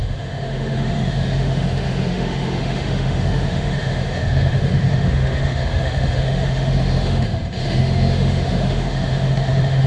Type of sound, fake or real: fake